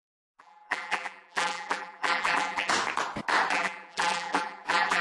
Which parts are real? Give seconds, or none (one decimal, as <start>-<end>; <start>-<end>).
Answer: 2.7-3.5